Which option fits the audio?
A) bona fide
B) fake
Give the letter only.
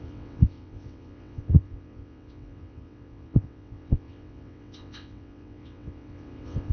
B